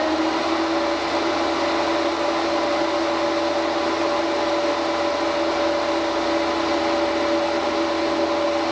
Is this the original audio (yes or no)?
yes